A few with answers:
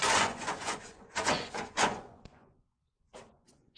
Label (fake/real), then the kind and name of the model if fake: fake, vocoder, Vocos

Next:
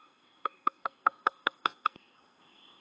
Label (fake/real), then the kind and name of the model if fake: fake, codec, SNAC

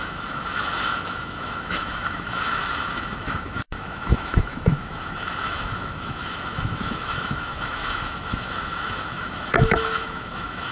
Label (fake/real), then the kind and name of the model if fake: fake, autoencoder, DAC-VAE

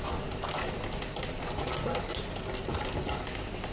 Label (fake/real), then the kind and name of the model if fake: real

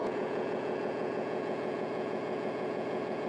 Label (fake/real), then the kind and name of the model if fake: fake, vocoder, Vocos